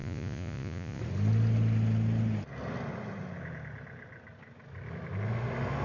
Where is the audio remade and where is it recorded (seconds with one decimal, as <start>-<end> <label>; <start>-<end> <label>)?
0.0-1.0 remade; 1.0-5.8 recorded